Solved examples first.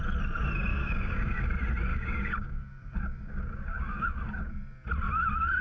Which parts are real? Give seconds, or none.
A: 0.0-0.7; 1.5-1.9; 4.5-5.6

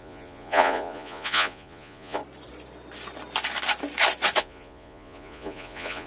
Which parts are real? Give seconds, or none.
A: 2.2-4.4

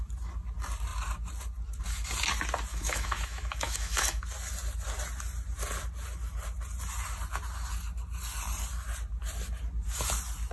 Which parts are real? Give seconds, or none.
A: 0.0-2.7; 4.2-10.5

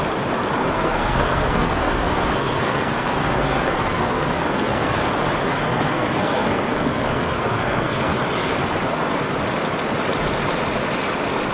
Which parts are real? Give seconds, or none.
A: 0.0-0.6; 5.1-5.5; 8.2-11.5

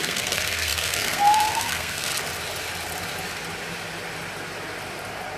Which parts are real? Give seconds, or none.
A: 2.1-5.4

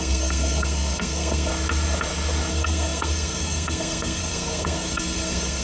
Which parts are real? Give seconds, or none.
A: 1.5-2.5

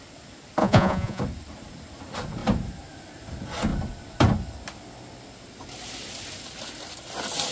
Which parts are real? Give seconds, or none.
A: 0.0-0.6; 1.2-7.5

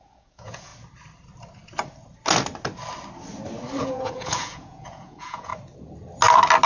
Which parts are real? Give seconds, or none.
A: 0.7-3.8; 5.5-6.7